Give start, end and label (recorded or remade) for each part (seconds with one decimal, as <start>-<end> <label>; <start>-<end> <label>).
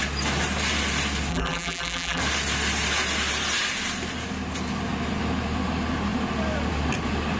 0.0-1.3 recorded; 1.3-2.2 remade; 2.2-7.4 recorded